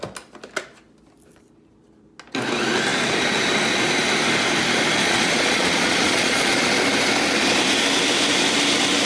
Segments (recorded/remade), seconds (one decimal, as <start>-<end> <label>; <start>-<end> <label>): 0.0-5.0 recorded; 5.0-6.6 remade; 6.6-9.1 recorded